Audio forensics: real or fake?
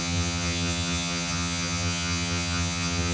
fake